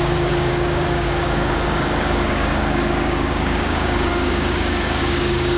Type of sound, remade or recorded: remade